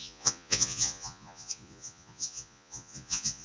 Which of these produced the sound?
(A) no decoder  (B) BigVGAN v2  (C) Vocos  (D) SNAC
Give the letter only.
C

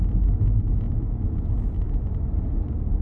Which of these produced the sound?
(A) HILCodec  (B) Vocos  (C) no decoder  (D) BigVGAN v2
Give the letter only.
C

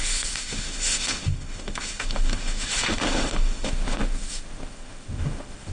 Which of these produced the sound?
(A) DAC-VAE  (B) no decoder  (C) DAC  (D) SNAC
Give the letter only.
A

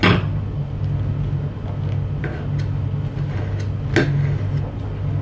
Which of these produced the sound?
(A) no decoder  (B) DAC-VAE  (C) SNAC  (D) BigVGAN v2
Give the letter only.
A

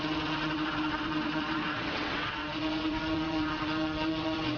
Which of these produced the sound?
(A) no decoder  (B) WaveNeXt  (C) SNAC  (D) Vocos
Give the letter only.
B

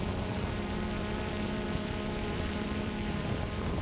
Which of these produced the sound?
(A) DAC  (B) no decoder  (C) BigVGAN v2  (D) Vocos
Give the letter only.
C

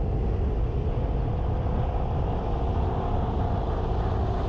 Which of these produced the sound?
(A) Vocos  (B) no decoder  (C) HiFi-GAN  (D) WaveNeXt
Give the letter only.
B